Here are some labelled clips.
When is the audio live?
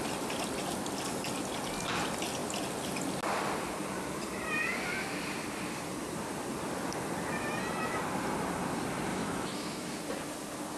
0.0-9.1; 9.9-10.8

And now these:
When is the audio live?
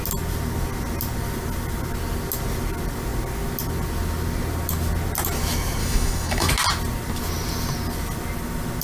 0.0-5.8; 6.5-8.8